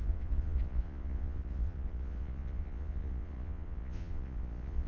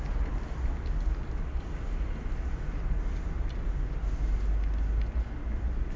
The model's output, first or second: first